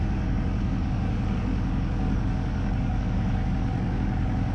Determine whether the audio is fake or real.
fake